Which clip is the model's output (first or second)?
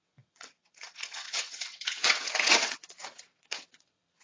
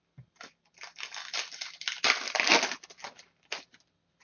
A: first